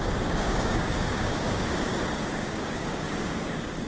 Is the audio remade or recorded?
remade